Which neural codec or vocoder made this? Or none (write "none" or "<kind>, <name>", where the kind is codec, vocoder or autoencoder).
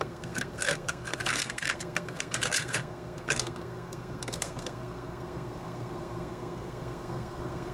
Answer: codec, SNAC